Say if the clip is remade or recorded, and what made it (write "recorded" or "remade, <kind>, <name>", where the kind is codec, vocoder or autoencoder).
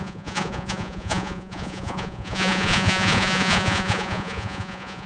remade, vocoder, Vocos